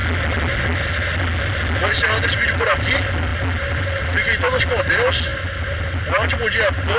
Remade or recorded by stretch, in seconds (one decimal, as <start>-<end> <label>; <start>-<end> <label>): 0.0-7.0 recorded